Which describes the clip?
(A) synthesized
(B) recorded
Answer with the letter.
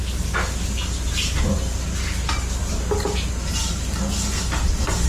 B